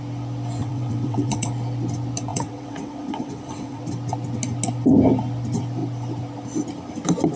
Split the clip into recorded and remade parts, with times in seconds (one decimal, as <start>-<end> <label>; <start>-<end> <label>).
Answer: 0.0-0.6 recorded; 0.6-1.5 remade; 1.5-2.3 recorded; 2.3-3.8 remade; 3.8-7.4 recorded